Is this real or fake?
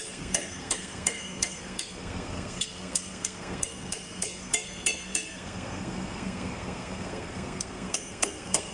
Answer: fake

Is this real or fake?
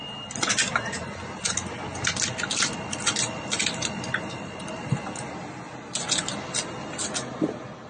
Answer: real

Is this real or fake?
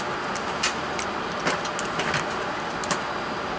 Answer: real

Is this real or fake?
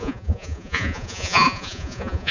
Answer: fake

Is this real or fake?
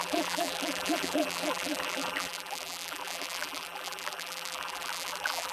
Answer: fake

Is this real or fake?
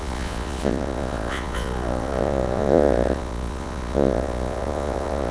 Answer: fake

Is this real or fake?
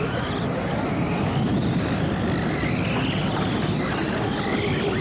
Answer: real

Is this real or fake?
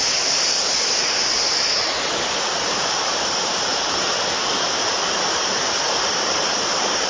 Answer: fake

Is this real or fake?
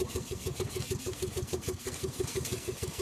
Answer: fake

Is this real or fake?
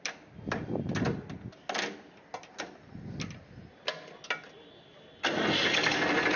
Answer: real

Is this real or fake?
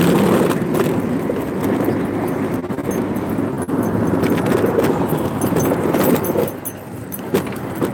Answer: real